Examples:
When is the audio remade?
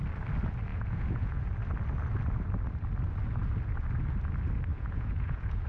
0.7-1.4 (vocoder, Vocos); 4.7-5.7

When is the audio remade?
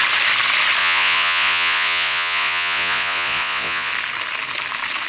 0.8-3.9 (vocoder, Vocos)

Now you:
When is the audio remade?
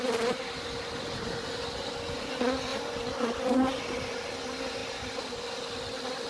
none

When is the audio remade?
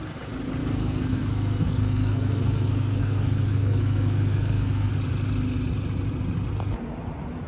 0.6-4.9 (codec, SNAC)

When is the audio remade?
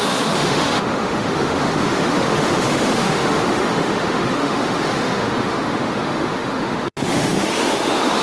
0.0-8.2 (autoencoder, DAC-VAE)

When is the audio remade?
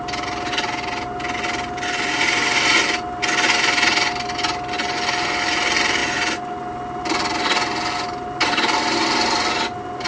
none